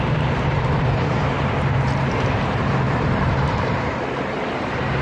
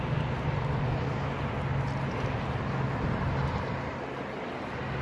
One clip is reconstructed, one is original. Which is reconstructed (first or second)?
first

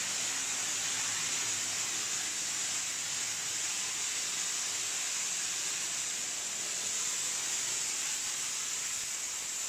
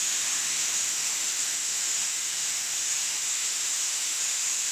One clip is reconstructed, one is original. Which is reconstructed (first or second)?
second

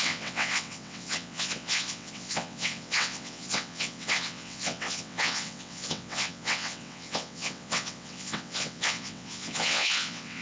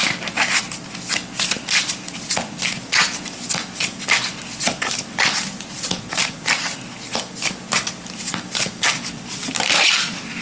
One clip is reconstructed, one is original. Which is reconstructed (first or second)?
first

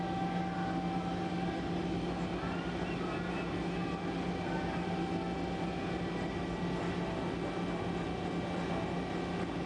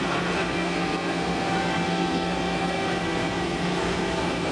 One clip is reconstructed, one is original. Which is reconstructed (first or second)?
second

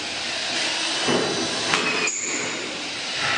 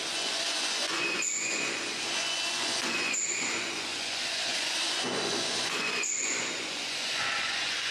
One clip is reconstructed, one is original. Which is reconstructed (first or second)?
second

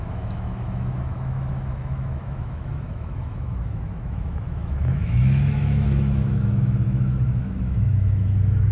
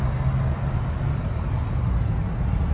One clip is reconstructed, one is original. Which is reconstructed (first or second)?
first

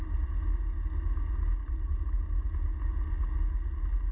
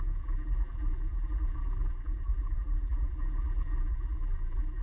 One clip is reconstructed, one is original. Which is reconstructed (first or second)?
second